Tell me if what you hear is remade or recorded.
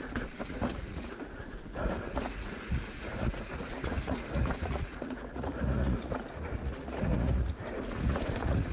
remade